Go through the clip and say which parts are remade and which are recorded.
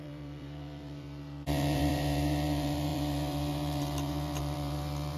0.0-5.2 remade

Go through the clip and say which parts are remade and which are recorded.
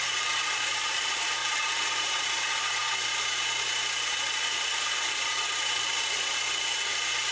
0.0-2.8 remade; 2.8-7.3 recorded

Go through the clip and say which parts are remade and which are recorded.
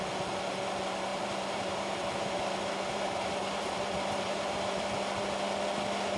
0.0-1.1 recorded; 1.1-4.8 remade; 4.8-6.2 recorded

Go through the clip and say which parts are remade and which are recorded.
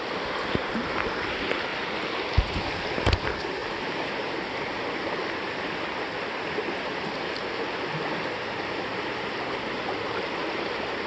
0.0-11.1 recorded